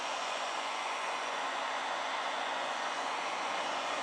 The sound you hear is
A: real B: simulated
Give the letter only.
B